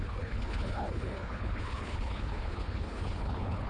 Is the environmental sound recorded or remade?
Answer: remade